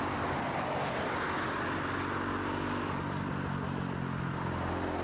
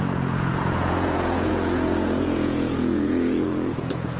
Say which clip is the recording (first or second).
first